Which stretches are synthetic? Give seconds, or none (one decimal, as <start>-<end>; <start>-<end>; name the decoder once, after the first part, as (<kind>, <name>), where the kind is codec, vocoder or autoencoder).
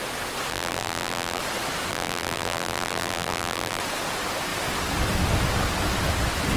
0.5-1.4 (vocoder, BigVGAN v2); 1.9-3.8